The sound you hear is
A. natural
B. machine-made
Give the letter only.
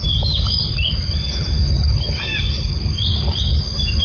A